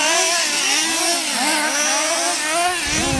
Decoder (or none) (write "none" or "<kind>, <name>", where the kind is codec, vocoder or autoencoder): none